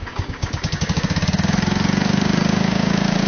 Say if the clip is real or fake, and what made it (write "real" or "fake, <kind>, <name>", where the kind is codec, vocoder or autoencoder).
fake, codec, DAC